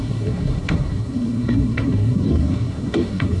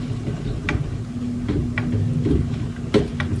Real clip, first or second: second